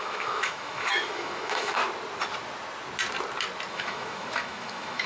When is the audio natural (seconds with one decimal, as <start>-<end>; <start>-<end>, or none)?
1.8-3.7